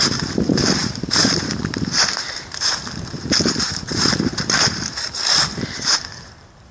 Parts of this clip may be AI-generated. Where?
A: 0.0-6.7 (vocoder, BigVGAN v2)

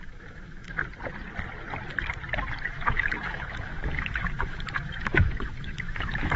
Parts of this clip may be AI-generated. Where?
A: 0.0-0.8 (autoencoder, DAC-VAE); 2.7-6.4

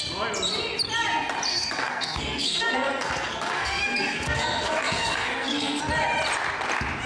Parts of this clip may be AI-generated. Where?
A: 1.5-5.8 (codec, SNAC)

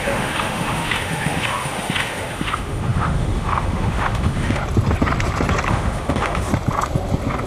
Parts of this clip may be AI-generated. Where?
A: 0.0-4.6 (autoencoder, DAC-VAE); 5.7-6.5

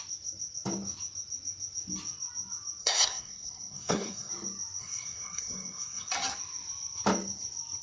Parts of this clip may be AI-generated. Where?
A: 2.8-4.3 (codec, SNAC); 4.8-6.1